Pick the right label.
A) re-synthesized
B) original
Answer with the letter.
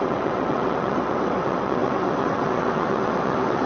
A